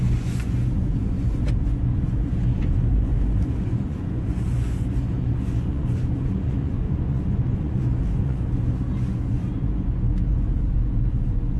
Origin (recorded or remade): remade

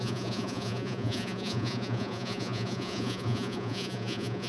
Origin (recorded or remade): remade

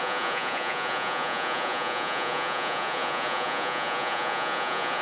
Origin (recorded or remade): remade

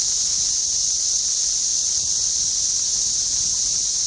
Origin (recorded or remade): remade